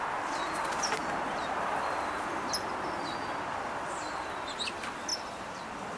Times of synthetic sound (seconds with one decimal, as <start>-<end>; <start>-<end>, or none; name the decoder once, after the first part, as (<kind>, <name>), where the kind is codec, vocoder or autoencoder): 1.0-2.5 (vocoder, BigVGAN v2)